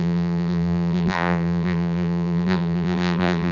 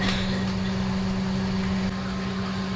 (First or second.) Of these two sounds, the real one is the second